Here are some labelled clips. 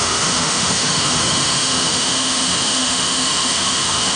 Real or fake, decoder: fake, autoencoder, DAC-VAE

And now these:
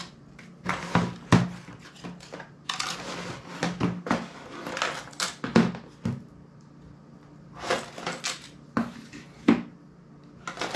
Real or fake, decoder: real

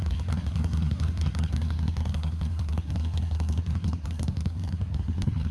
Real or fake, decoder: fake, codec, SNAC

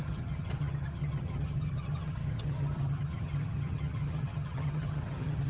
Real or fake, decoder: fake, vocoder, HiFi-GAN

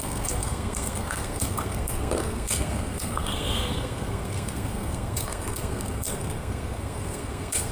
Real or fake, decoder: fake, codec, SNAC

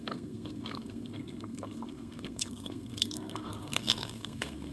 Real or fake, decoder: fake, codec, SNAC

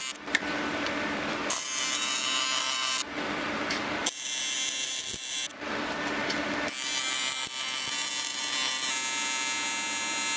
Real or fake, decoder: real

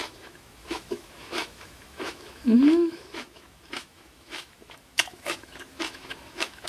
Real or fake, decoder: fake, autoencoder, DAC-VAE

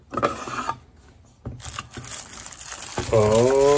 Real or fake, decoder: real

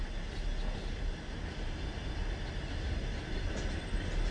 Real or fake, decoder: real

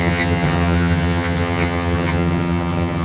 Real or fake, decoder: fake, vocoder, HiFi-GAN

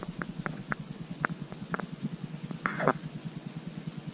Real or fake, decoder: fake, vocoder, Vocos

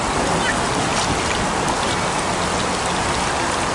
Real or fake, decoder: real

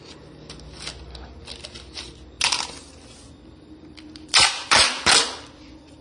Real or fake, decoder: real